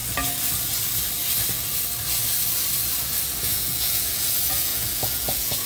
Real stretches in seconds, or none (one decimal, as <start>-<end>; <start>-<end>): 0.0-3.4